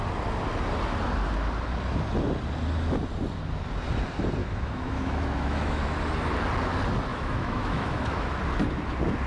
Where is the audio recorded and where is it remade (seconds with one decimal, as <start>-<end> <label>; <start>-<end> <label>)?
0.0-4.4 recorded; 4.4-6.0 remade; 6.0-7.1 recorded; 7.1-8.4 remade; 8.4-9.3 recorded